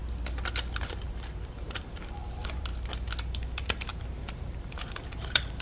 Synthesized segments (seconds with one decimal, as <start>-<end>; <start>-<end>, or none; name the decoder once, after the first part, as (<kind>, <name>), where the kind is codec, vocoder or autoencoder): 0.8-2.7 (vocoder, BigVGAN v2); 3.3-5.6